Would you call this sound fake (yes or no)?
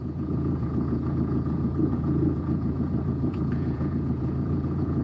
yes